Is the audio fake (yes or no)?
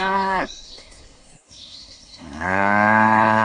yes